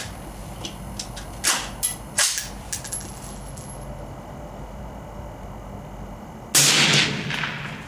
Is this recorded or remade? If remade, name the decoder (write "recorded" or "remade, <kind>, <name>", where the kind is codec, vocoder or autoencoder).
recorded